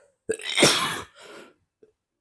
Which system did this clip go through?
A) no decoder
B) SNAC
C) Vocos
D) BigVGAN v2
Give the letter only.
A